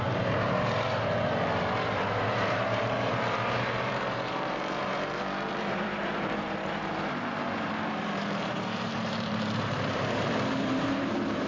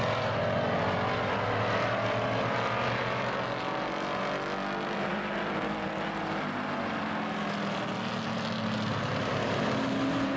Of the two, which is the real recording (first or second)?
second